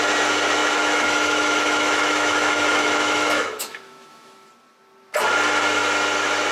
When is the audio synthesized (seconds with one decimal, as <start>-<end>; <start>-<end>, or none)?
0.6-4.5